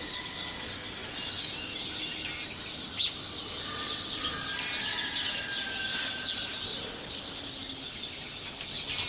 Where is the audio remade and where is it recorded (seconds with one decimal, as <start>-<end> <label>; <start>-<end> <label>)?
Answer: 0.0-9.1 recorded